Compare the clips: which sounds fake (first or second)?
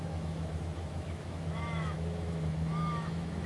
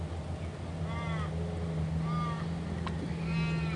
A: first